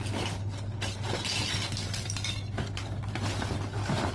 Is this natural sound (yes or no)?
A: yes